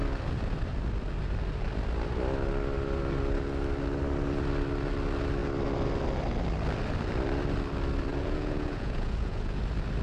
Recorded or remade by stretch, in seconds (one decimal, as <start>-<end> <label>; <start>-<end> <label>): 0.0-8.1 recorded; 8.1-9.6 remade; 9.6-10.0 recorded